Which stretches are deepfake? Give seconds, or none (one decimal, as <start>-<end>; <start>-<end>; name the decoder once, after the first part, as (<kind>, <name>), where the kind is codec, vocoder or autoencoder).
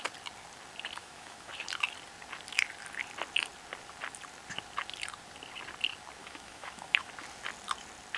1.0-1.5 (autoencoder, DAC-VAE); 6.2-7.1